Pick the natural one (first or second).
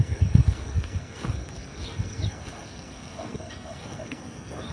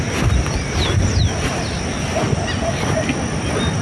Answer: second